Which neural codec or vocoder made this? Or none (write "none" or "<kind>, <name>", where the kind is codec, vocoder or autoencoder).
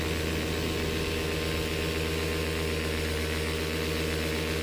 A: none